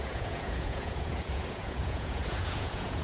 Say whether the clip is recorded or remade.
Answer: remade